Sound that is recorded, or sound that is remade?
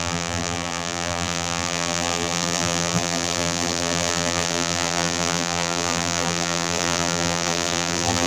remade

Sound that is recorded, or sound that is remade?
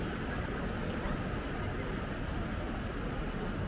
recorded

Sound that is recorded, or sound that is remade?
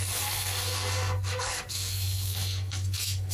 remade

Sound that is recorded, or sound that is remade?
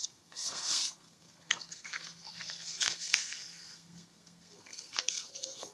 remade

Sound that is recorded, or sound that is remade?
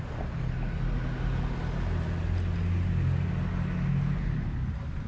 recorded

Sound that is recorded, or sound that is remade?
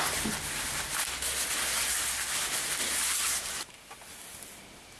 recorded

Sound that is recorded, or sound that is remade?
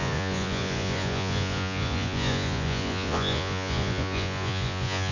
remade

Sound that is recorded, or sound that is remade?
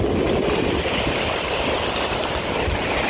recorded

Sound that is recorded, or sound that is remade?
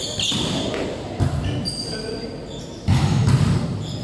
recorded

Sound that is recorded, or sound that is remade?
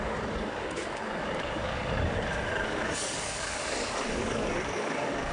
remade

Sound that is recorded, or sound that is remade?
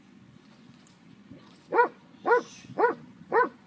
remade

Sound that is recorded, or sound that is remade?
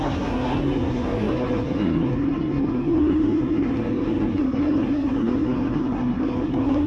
remade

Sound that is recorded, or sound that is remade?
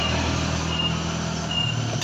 recorded